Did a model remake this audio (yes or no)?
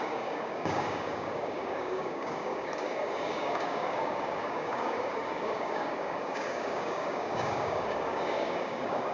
yes